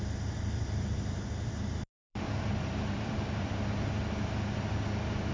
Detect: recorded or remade remade